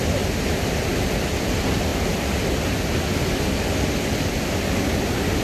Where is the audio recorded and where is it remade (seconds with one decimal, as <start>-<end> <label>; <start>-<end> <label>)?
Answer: 0.0-5.4 recorded